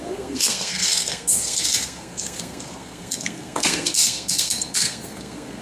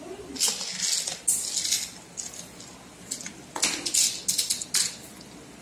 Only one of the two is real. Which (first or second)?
second